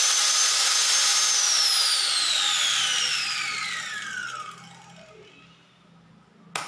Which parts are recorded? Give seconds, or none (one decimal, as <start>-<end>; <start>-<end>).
0.0-6.7